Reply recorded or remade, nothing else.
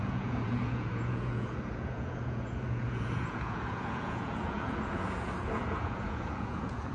remade